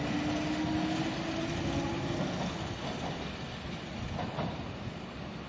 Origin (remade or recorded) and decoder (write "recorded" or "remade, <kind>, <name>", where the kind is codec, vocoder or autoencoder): recorded